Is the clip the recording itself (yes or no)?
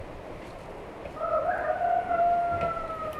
yes